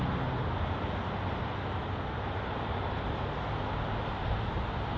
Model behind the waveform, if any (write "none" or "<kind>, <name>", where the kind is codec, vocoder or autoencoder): none